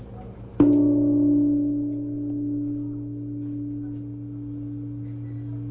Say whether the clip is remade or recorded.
recorded